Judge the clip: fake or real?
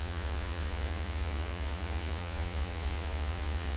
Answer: fake